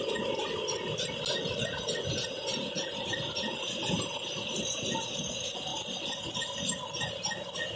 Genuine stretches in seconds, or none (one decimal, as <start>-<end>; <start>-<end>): 0.0-7.8